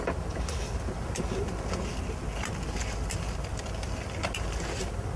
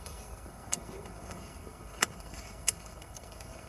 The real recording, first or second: first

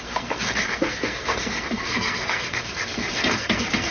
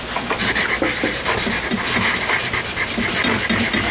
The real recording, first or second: second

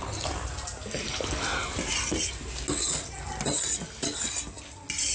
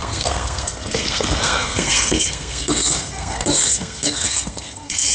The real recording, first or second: first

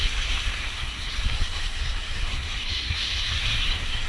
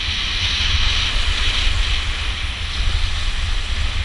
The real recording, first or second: second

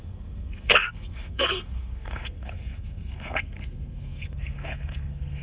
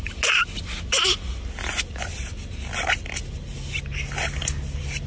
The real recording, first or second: second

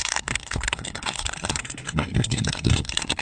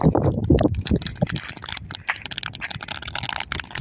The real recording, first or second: second